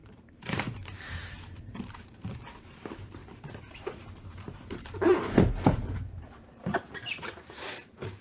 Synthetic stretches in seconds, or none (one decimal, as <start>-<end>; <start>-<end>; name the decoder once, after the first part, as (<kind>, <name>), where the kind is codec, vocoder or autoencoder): 0.0-8.2 (vocoder, BigVGAN v2)